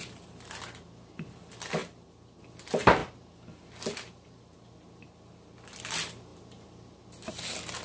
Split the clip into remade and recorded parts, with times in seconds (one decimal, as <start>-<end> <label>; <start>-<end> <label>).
0.0-7.8 recorded